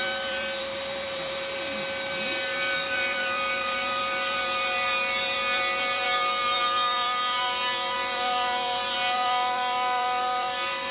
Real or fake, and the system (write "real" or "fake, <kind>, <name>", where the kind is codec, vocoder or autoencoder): fake, vocoder, BigVGAN v2